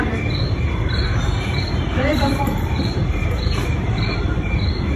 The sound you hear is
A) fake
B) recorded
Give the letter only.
A